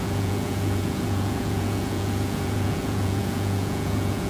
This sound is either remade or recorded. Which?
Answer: remade